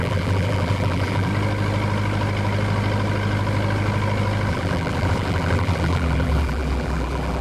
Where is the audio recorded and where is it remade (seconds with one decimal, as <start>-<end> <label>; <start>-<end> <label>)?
0.0-1.3 remade; 1.3-4.5 recorded; 4.5-7.4 remade